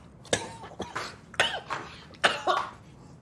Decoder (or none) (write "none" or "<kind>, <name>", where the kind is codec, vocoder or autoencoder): none